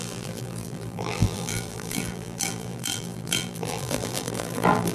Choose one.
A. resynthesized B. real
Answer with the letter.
A